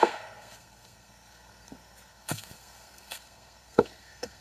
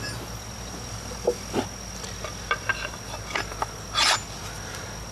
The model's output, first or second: first